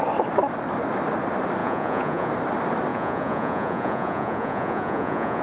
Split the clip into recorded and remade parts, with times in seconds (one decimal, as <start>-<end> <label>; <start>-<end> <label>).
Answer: 0.0-1.6 recorded; 1.6-2.3 remade; 2.3-2.9 recorded; 2.9-5.4 remade